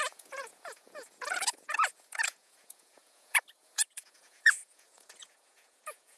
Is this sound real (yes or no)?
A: no